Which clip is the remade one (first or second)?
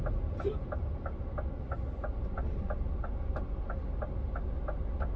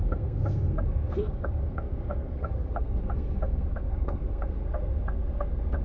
second